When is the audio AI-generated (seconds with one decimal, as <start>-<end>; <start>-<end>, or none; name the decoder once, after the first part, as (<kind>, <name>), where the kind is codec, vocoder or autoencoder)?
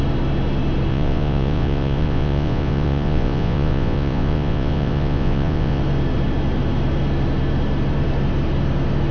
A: 0.9-5.8 (vocoder, Vocos)